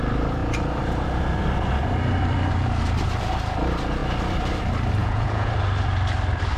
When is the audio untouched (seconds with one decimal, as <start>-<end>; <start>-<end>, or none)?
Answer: 0.0-5.0; 5.5-6.6